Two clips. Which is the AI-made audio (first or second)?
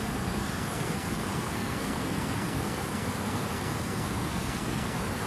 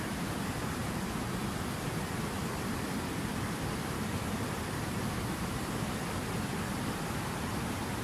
first